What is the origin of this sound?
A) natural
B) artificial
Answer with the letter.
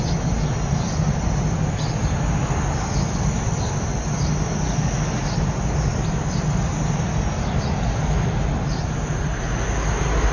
A